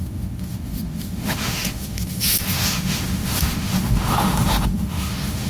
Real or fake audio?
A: fake